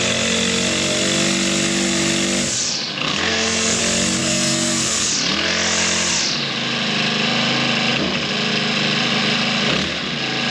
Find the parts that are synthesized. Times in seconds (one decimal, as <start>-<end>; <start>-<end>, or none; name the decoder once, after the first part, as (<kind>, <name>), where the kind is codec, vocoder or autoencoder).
3.1-3.8 (codec, SNAC); 4.2-5.1